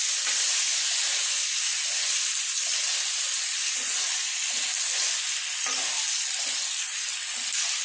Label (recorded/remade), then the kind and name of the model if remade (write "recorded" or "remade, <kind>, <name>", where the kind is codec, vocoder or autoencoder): recorded